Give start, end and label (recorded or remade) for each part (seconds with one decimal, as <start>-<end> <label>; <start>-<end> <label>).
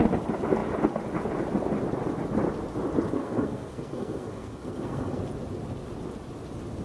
0.0-3.2 recorded; 3.2-5.2 remade; 5.2-6.8 recorded